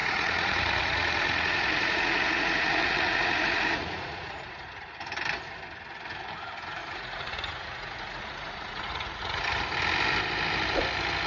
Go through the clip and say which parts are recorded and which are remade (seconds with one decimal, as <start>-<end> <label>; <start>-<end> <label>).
0.0-4.9 remade; 4.9-6.8 recorded; 6.8-9.5 remade; 9.5-11.3 recorded